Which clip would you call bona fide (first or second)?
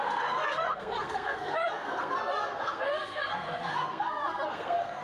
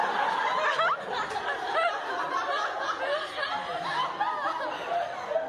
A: second